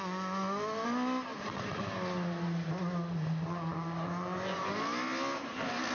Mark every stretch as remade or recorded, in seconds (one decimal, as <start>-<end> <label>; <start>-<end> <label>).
0.0-1.3 recorded; 1.3-1.8 remade; 1.8-5.9 recorded